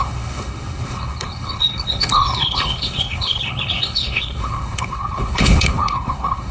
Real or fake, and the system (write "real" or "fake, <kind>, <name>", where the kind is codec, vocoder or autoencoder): fake, codec, HILCodec